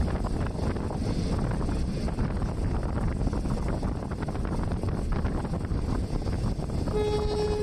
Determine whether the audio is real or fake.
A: real